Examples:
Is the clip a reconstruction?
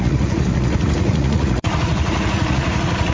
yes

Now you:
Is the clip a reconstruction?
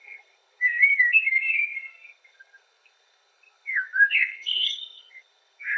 yes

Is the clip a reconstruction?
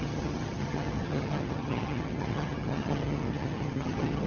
yes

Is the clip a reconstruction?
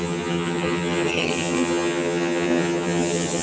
yes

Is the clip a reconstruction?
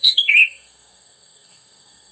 yes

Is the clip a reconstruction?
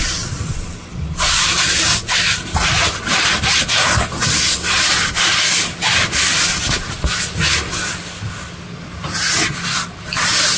no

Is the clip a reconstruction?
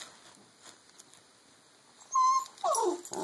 no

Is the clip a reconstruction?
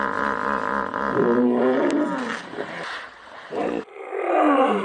no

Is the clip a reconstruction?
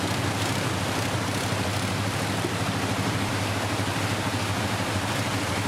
no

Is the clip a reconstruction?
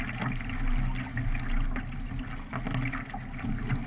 no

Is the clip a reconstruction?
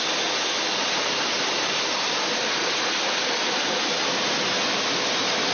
no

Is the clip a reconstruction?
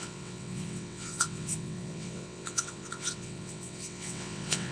yes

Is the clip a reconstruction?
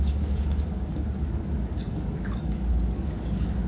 yes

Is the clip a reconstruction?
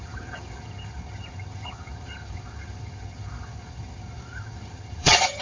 yes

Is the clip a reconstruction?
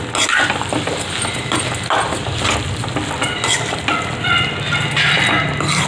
no